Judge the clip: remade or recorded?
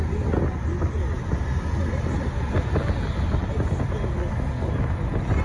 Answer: recorded